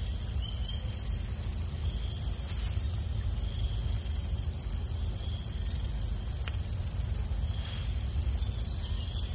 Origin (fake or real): real